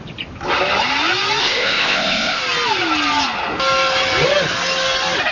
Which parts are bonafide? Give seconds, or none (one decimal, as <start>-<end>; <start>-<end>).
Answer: 0.0-1.4; 2.4-5.3